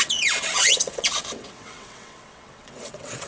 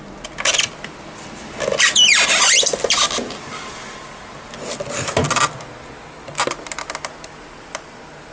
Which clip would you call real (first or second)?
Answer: second